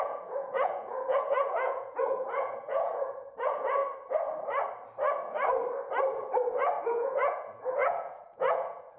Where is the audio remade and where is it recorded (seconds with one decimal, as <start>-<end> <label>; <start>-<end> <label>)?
0.0-3.8 remade; 3.8-6.8 recorded; 6.8-9.0 remade